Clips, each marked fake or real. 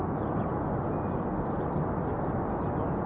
real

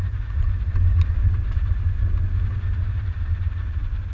real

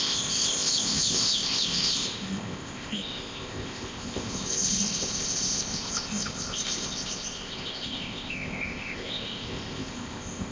fake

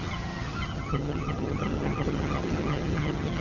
fake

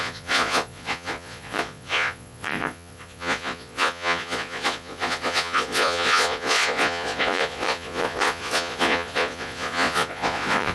fake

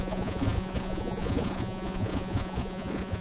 fake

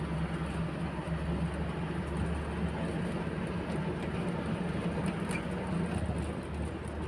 real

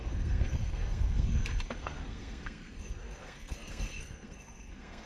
fake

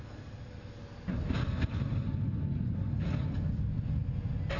real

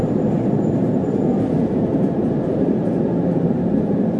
fake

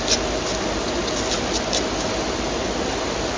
real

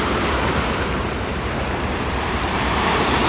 fake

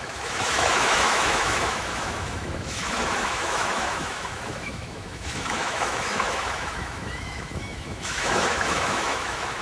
fake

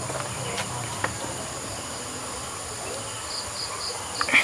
real